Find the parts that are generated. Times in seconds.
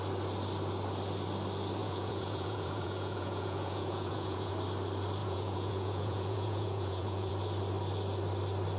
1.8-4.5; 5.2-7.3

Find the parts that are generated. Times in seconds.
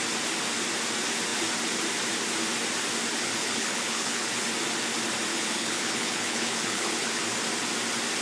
3.4-4.3; 5.3-7.2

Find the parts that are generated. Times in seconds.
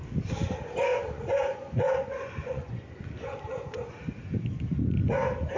0.9-3.1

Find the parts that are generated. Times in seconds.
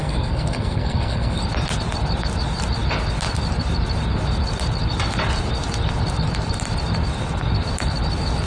0.0-1.4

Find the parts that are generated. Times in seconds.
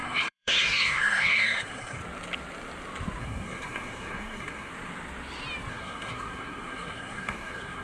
0.0-2.0; 3.2-4.7; 5.7-7.8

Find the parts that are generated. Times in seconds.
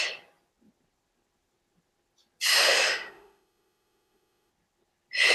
2.5-4.5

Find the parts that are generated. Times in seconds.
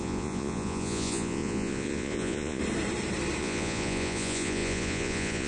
0.0-2.6; 3.4-5.5